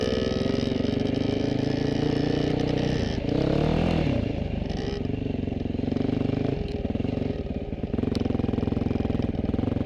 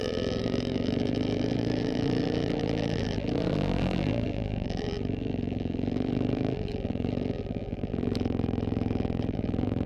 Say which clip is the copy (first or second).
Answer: second